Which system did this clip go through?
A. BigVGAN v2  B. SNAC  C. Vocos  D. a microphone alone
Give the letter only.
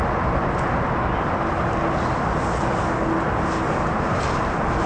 D